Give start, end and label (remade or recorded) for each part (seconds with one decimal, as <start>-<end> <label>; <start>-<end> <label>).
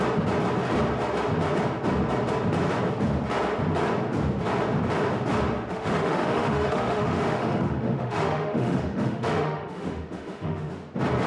0.0-5.7 recorded; 5.7-10.7 remade; 10.7-11.3 recorded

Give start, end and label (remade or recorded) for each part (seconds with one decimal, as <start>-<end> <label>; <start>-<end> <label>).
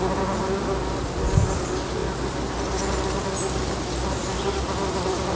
0.0-5.3 recorded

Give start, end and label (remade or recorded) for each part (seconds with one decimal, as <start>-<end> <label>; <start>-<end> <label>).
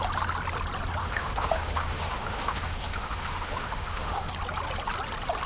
0.0-1.0 recorded; 1.0-4.3 remade; 4.3-5.5 recorded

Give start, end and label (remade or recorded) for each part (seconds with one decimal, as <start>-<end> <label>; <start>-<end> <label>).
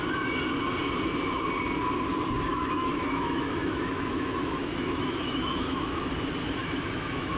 0.0-2.5 recorded; 2.5-6.1 remade; 6.1-6.6 recorded; 6.6-7.4 remade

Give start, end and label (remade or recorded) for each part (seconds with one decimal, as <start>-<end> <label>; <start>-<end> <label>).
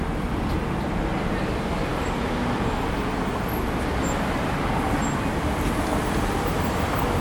0.0-7.2 recorded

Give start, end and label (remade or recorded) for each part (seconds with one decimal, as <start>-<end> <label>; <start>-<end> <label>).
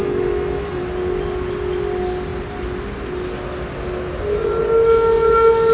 0.0-0.8 remade; 0.8-5.7 recorded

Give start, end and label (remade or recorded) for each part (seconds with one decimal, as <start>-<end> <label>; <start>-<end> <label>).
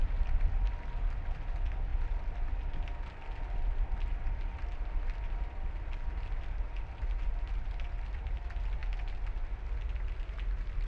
0.0-10.9 recorded